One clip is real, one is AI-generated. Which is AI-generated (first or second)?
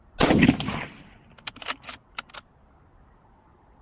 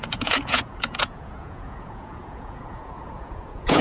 second